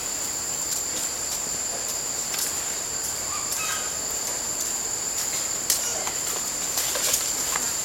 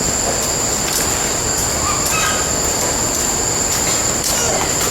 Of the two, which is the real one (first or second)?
second